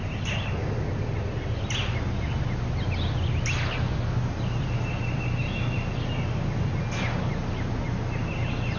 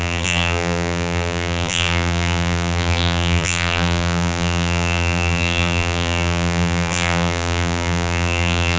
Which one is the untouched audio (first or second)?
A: first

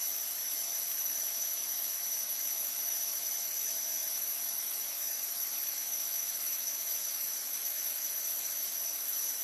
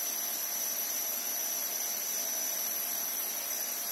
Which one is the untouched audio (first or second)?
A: second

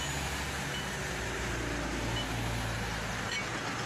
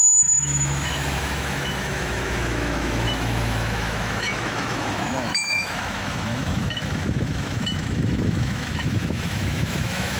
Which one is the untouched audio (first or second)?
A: first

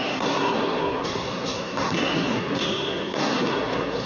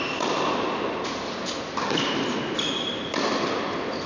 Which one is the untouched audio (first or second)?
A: second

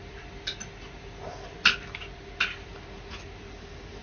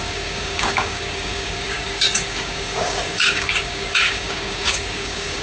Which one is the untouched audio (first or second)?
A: first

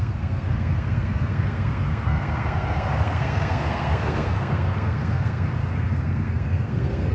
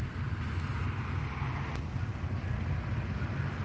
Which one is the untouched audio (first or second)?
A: second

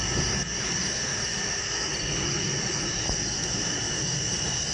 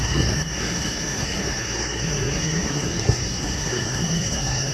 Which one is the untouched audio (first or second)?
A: first